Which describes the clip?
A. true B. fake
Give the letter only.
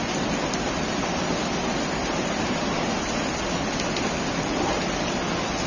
A